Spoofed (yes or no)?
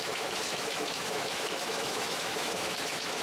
yes